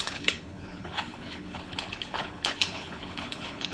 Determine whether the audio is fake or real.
fake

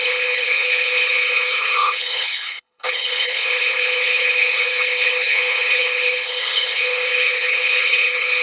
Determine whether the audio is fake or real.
fake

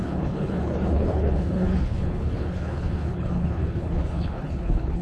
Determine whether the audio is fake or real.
fake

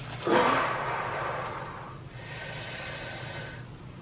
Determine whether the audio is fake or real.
real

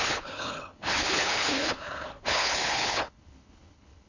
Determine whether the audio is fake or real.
fake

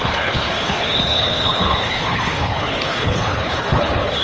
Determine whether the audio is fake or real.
fake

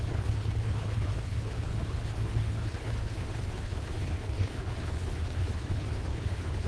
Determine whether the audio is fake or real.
fake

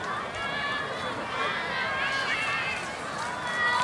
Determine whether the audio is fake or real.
real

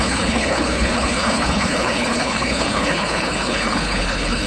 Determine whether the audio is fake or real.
fake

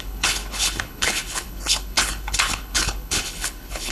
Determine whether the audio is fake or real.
fake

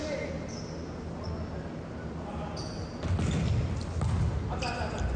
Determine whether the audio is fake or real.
real